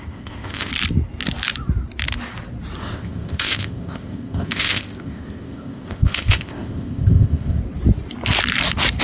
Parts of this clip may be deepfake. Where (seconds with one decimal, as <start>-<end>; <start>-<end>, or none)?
0.0-0.7; 2.8-7.6